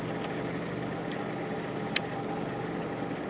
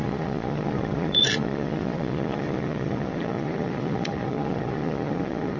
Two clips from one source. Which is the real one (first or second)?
first